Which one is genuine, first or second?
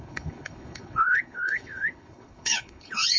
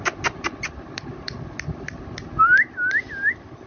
second